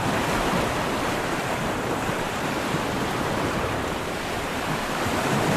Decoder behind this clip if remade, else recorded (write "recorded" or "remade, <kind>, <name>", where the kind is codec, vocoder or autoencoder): remade, vocoder, BigVGAN v2